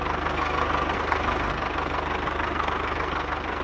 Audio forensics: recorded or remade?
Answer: remade